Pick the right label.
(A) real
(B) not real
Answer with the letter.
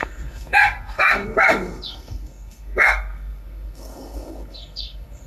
B